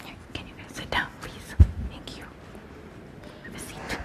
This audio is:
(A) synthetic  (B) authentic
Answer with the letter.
B